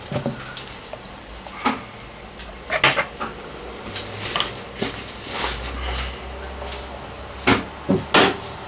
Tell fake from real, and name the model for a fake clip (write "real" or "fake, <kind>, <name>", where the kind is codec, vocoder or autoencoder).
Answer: real